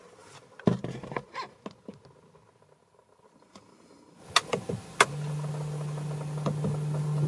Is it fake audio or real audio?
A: real